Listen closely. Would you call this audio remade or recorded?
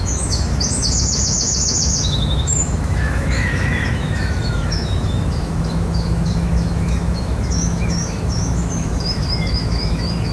remade